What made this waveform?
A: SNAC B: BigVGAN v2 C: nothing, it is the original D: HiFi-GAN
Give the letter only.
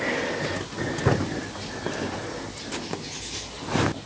C